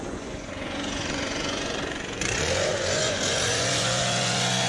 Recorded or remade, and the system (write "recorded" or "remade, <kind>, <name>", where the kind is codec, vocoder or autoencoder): remade, vocoder, Vocos